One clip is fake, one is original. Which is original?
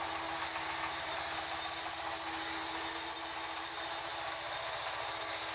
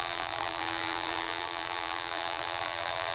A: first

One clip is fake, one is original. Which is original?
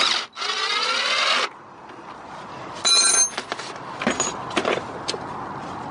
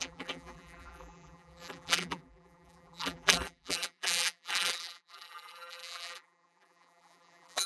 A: first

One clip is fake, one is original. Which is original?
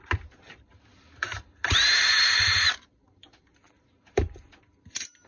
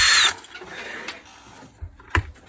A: second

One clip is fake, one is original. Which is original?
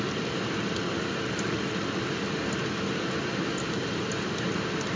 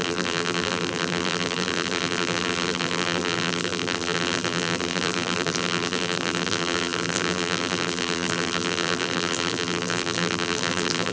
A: first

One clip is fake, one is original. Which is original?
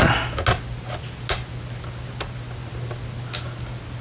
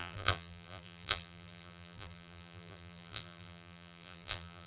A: first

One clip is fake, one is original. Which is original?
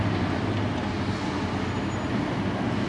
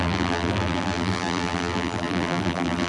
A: first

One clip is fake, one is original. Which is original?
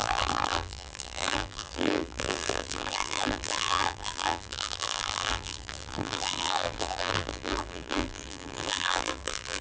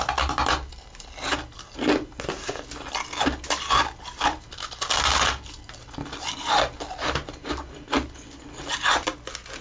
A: second